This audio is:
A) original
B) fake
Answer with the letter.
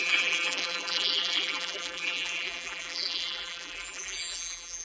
B